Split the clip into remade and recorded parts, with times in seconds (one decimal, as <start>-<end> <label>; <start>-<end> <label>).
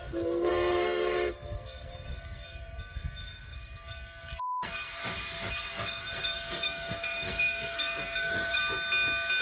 0.0-5.0 remade; 5.0-5.5 recorded; 5.5-8.6 remade; 8.6-9.4 recorded